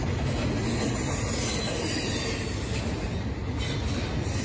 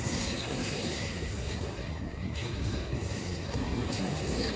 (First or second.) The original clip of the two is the first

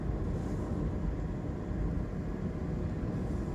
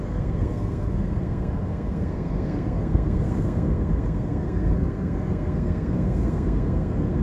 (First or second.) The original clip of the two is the first